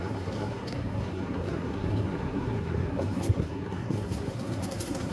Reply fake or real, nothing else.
fake